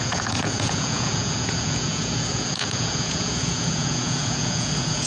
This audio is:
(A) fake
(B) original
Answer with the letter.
A